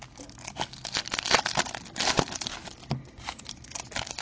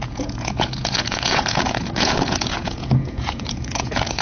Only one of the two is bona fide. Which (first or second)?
first